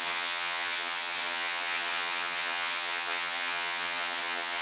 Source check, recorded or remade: remade